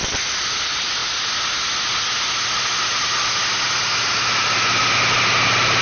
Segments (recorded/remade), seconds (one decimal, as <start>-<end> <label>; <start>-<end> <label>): 0.0-5.8 recorded